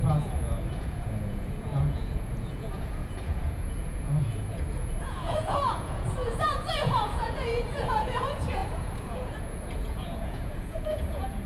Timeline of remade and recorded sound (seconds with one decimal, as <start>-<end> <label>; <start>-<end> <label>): 0.0-11.5 remade